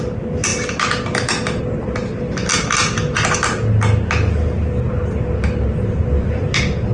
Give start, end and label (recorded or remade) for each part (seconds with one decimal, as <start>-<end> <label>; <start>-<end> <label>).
0.0-6.9 recorded